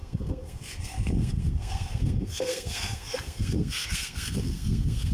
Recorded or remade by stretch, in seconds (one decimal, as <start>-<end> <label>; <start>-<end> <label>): 0.0-5.1 remade